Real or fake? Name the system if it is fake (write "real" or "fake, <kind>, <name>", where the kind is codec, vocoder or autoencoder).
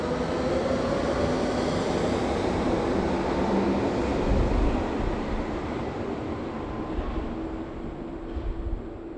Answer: real